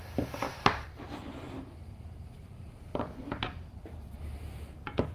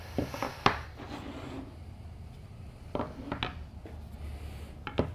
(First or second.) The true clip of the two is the second